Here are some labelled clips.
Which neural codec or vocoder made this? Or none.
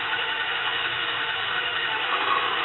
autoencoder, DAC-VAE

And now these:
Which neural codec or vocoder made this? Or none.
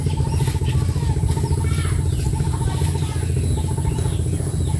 none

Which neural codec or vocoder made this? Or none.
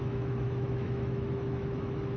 autoencoder, DAC-VAE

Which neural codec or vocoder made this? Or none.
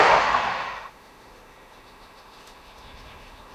autoencoder, DAC-VAE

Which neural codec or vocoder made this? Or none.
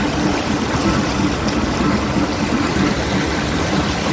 none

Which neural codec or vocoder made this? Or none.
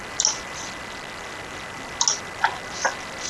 none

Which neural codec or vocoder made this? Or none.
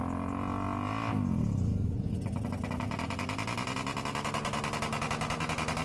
none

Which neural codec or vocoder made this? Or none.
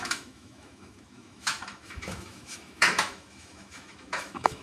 autoencoder, DAC-VAE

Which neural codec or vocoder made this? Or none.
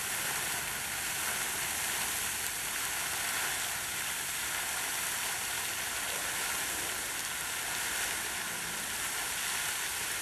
none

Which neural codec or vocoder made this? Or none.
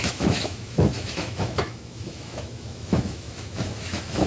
autoencoder, DAC-VAE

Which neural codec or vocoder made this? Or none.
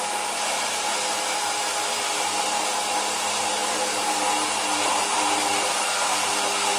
none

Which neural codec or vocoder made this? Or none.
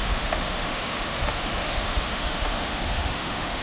autoencoder, DAC-VAE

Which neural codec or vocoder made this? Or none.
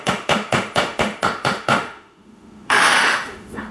autoencoder, DAC-VAE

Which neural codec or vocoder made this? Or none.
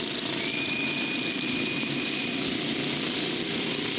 none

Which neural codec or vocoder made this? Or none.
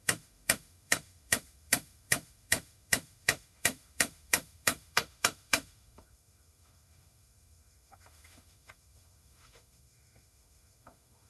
autoencoder, DAC-VAE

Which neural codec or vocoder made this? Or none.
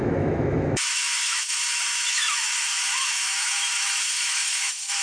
autoencoder, DAC-VAE